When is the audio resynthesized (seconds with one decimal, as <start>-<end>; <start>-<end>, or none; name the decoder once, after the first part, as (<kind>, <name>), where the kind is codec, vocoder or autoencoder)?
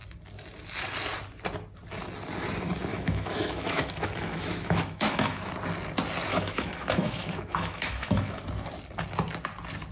2.9-5.5 (autoencoder, DAC-VAE); 6.3-8.4